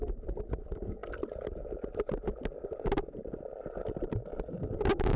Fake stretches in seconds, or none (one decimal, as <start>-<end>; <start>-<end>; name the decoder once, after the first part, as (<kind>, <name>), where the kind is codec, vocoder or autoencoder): none